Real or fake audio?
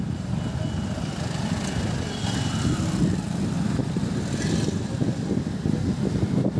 real